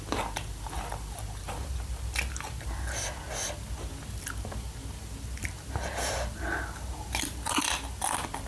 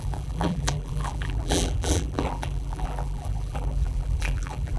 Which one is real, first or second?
first